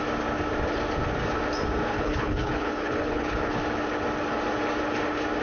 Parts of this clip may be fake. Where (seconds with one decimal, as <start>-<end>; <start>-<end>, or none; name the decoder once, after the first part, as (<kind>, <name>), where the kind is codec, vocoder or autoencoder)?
1.9-3.6 (codec, HILCodec)